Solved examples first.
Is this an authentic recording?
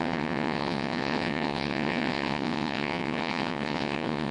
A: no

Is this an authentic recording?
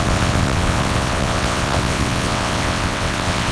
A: no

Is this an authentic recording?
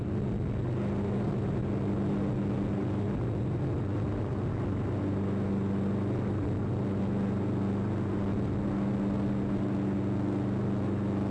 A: yes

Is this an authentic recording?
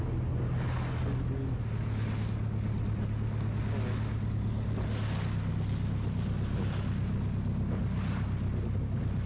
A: yes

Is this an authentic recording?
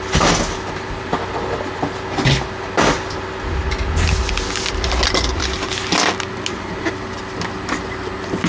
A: yes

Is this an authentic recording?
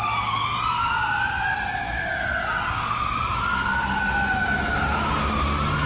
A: yes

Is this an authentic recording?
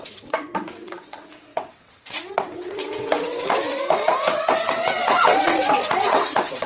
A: no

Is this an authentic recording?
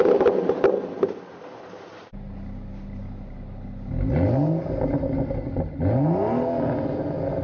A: yes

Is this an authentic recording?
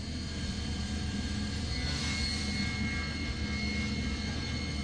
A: yes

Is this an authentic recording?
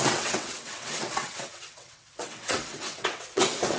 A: no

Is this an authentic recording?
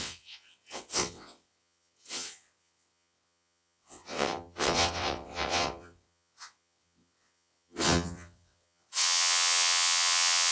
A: no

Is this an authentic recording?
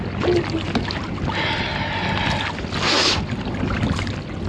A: yes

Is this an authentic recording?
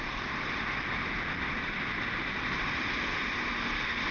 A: yes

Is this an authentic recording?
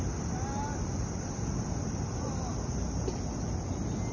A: yes